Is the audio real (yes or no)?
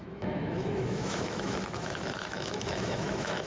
no